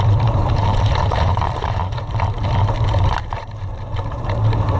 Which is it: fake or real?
fake